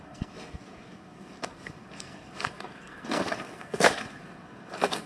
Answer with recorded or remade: remade